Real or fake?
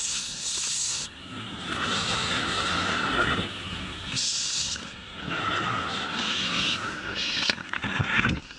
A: fake